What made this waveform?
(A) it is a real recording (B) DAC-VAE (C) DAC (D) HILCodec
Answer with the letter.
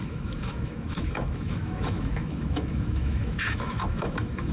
B